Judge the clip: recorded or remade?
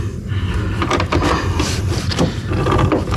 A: recorded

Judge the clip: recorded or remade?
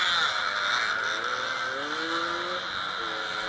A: recorded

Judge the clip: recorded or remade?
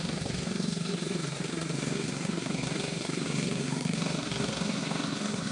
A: remade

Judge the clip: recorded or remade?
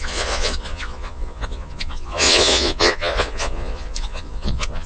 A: remade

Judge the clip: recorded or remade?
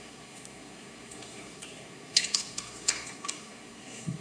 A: remade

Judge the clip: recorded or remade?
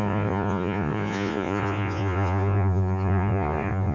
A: remade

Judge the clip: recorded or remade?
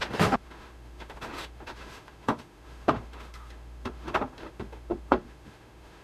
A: remade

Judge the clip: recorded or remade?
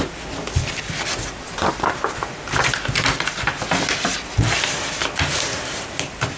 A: recorded